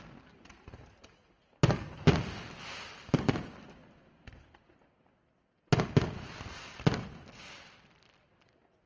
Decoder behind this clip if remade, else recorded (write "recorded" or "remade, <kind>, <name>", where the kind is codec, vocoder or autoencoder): recorded